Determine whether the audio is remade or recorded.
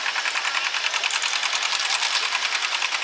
recorded